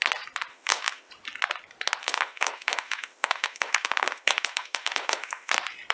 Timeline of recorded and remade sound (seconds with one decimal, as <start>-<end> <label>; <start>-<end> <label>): 0.0-0.5 recorded; 0.5-1.1 remade; 1.1-2.0 recorded; 2.0-5.5 remade; 5.5-5.9 recorded